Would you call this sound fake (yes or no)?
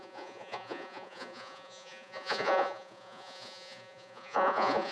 yes